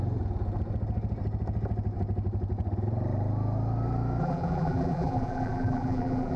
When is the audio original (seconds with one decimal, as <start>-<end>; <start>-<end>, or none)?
0.0-4.2